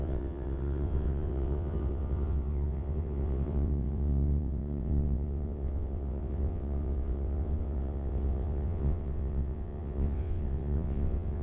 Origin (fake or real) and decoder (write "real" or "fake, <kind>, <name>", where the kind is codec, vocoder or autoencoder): fake, vocoder, WaveNeXt